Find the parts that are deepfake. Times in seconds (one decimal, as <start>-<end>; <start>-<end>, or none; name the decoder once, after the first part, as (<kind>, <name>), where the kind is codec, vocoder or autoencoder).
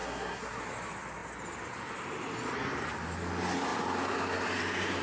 0.0-0.6 (codec, SNAC)